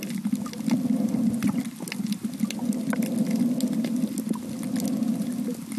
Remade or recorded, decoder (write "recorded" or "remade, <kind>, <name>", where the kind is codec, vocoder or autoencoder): recorded